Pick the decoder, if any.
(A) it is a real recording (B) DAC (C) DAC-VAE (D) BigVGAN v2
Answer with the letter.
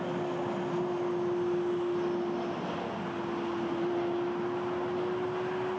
A